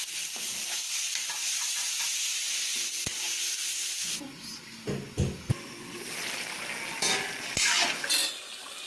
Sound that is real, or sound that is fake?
real